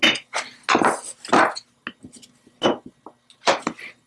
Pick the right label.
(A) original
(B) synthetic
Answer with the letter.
A